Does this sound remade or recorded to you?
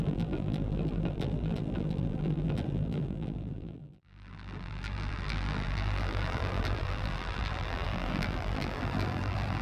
remade